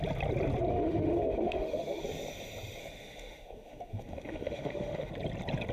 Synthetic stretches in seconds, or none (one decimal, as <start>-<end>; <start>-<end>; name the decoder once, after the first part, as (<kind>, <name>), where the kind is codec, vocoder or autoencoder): 0.7-2.0 (autoencoder, DAC-VAE); 2.8-5.1